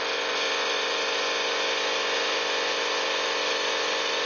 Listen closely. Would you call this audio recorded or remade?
remade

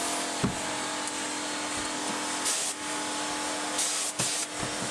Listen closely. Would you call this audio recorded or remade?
recorded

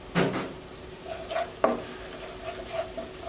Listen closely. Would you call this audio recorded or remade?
recorded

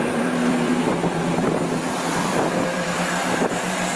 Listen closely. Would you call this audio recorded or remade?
remade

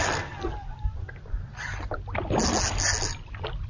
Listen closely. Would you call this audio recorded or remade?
recorded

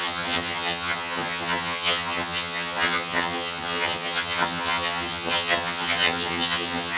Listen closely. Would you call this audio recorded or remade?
remade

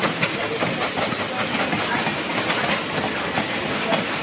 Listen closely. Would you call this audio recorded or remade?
recorded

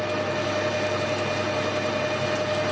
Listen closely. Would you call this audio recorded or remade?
recorded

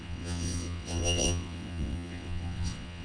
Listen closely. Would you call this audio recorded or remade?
remade